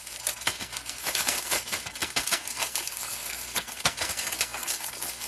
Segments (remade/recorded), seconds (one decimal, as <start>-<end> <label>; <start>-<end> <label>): 0.0-5.3 remade